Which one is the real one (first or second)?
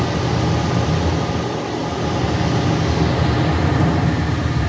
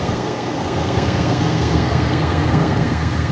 first